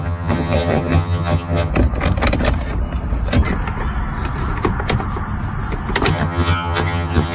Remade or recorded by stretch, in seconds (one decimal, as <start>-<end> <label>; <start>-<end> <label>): 0.0-1.7 remade; 1.7-6.1 recorded; 6.1-7.3 remade